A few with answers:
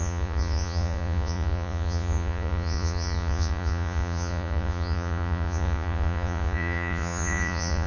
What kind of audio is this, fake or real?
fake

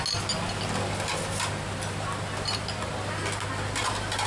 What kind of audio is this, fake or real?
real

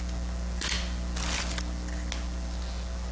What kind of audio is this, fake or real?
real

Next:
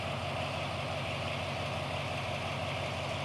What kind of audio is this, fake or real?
real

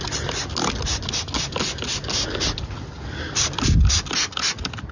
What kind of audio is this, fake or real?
real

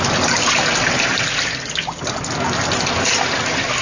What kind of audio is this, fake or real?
real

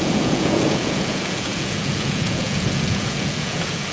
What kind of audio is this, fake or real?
fake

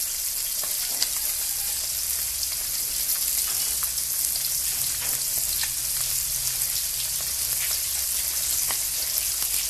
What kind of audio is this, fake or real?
real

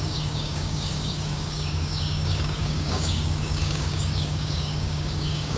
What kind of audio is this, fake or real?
fake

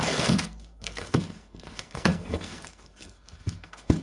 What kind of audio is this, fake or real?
fake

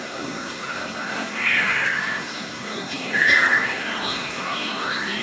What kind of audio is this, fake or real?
fake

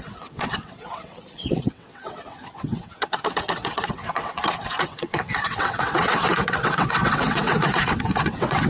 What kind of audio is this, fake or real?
fake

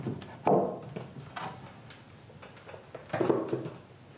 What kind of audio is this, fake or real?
real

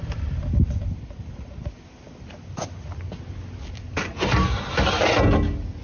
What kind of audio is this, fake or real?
real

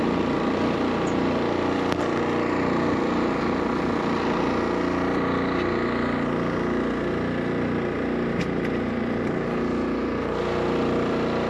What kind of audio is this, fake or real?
real